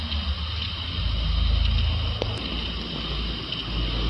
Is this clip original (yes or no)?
yes